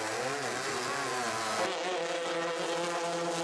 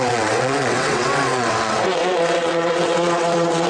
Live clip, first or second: first